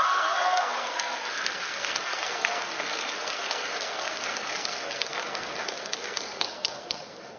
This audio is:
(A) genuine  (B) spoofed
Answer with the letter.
B